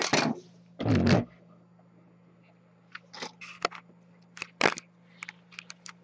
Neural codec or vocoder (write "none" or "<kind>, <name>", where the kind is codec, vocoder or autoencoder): none